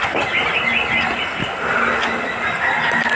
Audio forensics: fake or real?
real